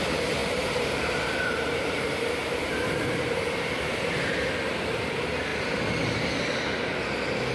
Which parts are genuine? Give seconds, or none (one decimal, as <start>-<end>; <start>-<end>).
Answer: 0.0-0.4; 2.7-7.5